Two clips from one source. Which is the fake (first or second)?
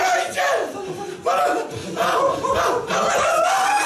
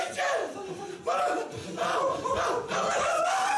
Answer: second